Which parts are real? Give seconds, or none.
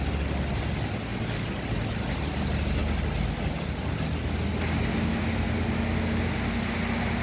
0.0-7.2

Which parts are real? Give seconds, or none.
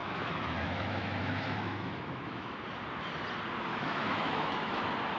2.6-3.7; 4.8-5.2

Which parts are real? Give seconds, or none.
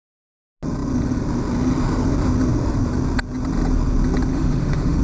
0.0-4.3